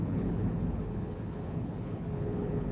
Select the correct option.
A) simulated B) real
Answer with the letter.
A